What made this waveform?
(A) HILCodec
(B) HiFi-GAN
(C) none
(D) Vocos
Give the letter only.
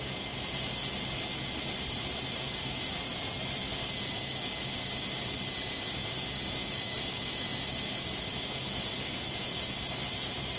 C